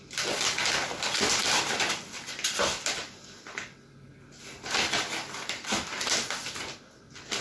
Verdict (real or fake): real